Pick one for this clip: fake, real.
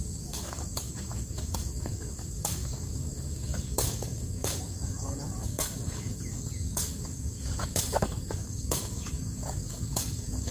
fake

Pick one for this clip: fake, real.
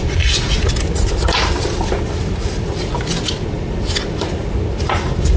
real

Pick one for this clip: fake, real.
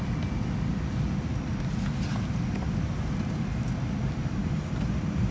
real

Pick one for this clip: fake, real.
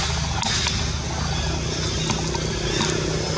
real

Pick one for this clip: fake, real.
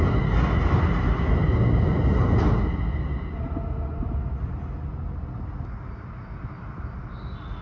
real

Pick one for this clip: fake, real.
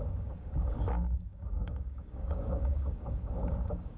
fake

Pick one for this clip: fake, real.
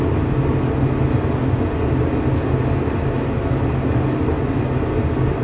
real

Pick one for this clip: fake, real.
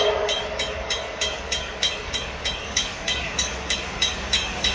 fake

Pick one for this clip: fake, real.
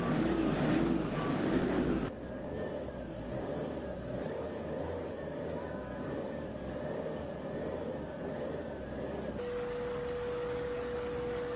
fake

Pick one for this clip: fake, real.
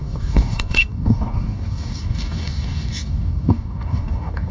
fake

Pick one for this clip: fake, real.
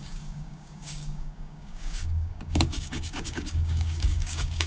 fake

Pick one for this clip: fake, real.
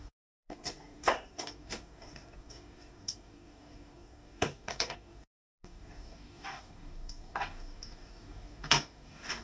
fake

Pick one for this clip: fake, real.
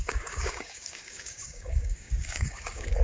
fake